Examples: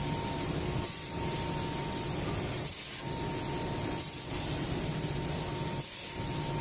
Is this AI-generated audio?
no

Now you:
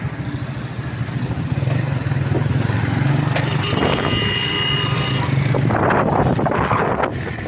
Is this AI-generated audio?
no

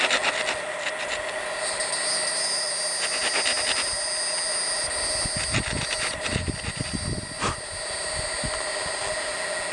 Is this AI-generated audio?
no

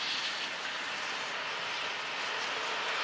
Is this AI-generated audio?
no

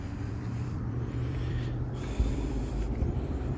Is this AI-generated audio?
yes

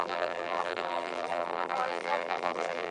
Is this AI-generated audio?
yes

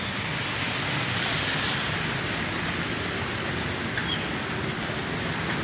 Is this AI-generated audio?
no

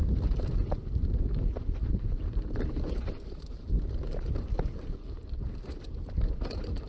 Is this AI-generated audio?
yes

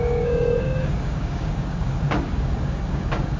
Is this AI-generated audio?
yes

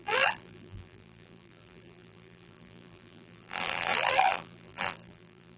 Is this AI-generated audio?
yes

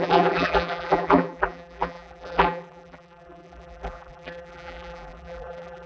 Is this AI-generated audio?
yes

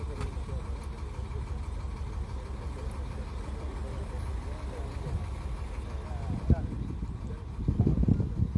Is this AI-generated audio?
no